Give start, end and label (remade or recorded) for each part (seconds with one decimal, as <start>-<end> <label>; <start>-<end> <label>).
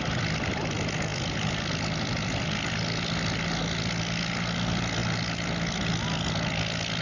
0.0-7.0 recorded